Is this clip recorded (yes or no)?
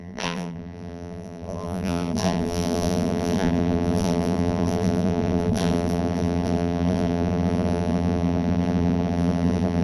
no